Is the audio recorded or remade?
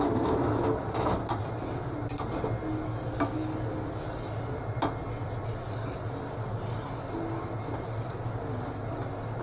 recorded